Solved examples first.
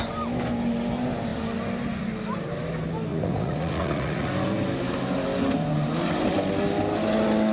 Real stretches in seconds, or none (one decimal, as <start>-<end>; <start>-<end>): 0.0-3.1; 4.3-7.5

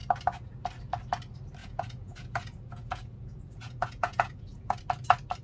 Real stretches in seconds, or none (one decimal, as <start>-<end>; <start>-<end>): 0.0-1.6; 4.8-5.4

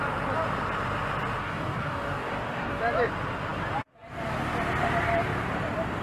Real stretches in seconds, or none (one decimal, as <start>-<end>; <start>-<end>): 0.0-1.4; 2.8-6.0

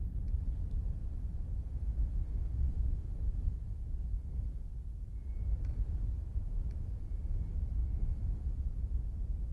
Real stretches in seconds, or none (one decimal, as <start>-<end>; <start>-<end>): 1.0-5.8; 7.8-8.7